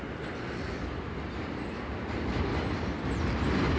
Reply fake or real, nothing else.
real